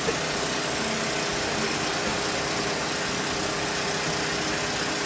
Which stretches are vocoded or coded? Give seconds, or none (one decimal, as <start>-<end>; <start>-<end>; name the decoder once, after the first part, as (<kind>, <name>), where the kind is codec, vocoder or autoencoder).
none